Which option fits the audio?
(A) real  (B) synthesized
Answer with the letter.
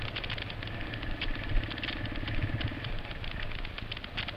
A